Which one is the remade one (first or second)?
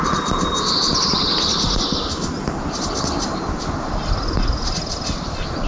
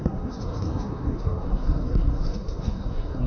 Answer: second